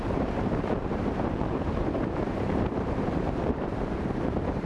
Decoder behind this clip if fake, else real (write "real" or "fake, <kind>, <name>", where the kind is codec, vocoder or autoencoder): fake, vocoder, BigVGAN v2